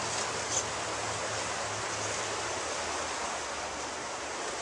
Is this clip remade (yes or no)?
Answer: no